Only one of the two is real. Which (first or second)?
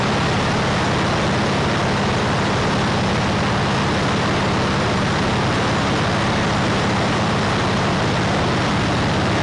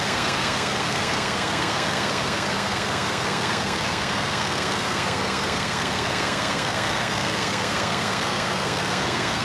first